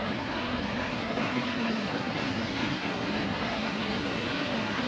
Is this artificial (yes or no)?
yes